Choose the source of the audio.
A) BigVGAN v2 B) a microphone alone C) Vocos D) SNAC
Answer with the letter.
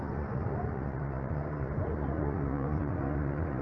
C